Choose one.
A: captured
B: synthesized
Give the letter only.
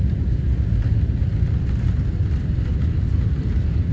A